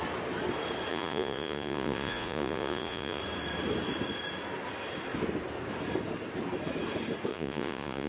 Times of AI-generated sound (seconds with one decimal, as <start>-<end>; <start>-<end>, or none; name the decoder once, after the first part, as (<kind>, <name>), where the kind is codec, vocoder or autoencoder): 0.9-3.2 (vocoder, Vocos); 7.3-8.1